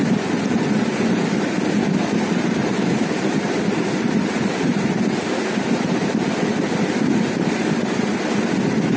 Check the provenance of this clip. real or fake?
real